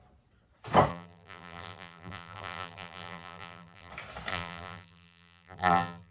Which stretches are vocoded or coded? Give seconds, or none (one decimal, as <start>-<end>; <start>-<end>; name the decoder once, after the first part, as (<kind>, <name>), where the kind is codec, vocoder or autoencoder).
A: 0.9-3.9 (vocoder, BigVGAN v2); 4.3-6.1